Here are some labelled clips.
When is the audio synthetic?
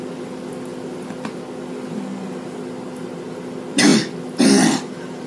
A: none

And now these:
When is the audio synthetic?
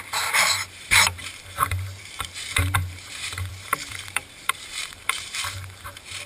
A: 0.0-6.3 (vocoder, BigVGAN v2)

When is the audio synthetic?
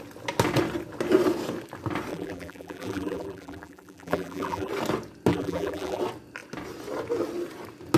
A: 2.1-4.7 (vocoder, BigVGAN v2); 5.3-6.0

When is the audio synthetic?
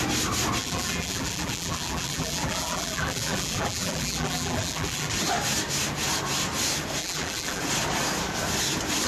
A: 0.6-5.1 (vocoder, BigVGAN v2); 7.0-7.6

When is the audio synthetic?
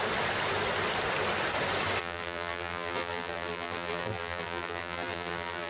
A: 2.0-5.7 (vocoder, BigVGAN v2)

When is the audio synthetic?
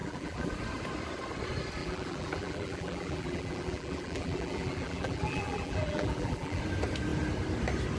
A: 0.0-0.5 (vocoder, BigVGAN v2); 1.8-6.6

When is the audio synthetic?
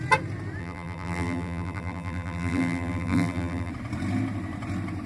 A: 0.6-3.7 (vocoder, BigVGAN v2)